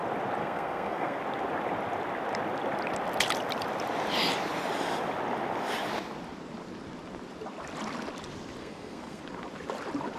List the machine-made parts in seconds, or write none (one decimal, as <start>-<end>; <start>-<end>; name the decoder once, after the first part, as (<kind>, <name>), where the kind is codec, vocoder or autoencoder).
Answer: 0.4-1.2 (codec, SNAC); 8.6-9.2